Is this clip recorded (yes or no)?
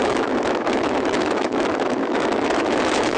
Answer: no